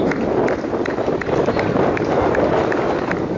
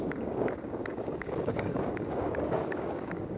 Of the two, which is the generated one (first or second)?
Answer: second